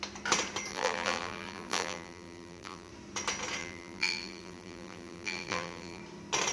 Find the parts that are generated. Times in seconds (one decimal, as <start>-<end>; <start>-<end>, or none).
0.7-2.9; 3.6-6.0